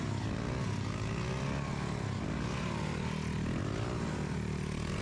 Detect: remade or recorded recorded